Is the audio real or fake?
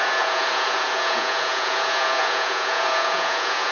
fake